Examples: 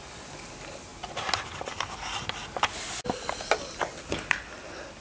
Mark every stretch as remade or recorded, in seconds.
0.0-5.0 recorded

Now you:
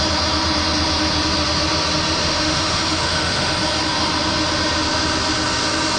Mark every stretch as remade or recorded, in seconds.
0.0-2.2 recorded; 2.2-3.5 remade; 3.5-6.0 recorded

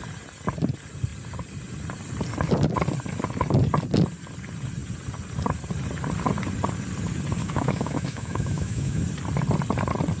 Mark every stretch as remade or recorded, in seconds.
0.0-7.4 recorded; 7.4-9.0 remade; 9.0-10.2 recorded

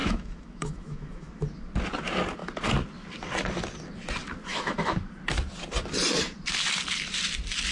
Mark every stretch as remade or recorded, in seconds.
0.0-1.3 remade; 1.3-4.5 recorded; 4.5-5.0 remade; 5.0-7.7 recorded

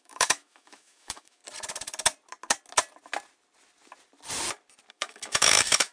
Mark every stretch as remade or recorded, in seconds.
0.0-1.4 remade; 1.4-4.9 recorded; 4.9-5.9 remade